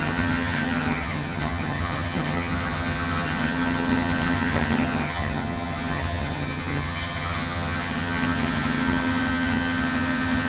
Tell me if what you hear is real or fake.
fake